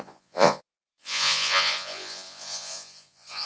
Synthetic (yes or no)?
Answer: yes